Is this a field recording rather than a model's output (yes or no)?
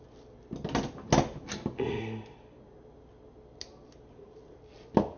yes